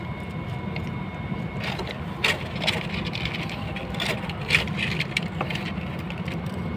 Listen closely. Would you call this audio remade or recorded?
remade